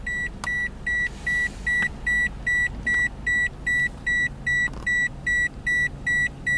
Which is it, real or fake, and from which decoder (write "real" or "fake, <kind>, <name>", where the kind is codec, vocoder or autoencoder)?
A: real